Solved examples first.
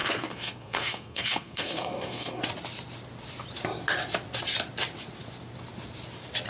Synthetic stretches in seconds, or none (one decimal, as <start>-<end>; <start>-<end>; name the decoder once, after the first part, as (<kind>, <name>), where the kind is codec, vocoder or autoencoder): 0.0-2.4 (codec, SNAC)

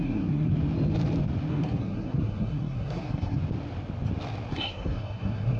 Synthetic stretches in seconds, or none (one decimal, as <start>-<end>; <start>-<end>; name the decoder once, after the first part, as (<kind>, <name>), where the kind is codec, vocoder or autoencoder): 0.0-0.5 (codec, SNAC); 1.5-3.4; 4.5-5.6

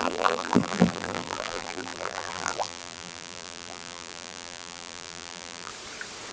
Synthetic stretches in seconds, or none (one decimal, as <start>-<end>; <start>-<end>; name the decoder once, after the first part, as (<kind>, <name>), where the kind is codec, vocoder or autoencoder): 0.0-5.7 (vocoder, BigVGAN v2)